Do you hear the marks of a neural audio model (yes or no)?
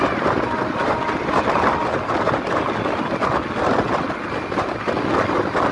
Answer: no